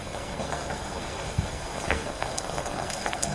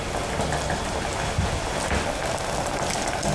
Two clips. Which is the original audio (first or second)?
second